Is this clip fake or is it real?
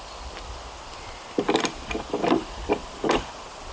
real